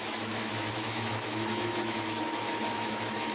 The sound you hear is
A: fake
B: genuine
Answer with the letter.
A